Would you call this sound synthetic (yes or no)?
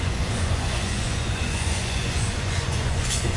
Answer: yes